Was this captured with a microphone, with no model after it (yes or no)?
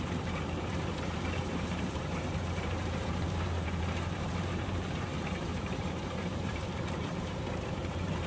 no